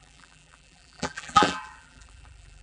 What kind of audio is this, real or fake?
fake